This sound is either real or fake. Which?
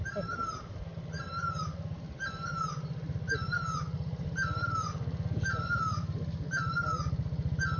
real